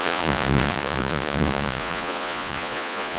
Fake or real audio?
fake